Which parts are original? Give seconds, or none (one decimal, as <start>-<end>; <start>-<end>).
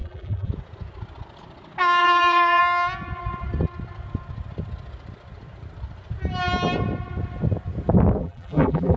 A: 0.5-2.0; 2.6-8.2